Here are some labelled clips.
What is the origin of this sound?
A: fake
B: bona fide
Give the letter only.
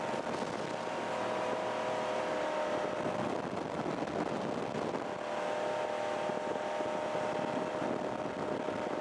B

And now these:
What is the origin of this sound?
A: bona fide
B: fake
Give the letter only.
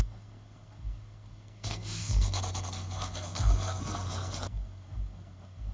B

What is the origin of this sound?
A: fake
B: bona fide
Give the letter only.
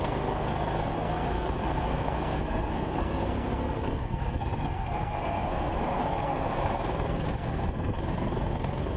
A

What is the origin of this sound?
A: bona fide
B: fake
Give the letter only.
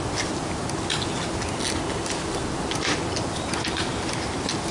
A